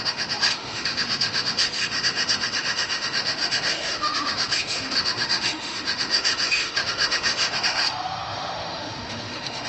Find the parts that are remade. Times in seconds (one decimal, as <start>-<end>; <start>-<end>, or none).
0.0-9.7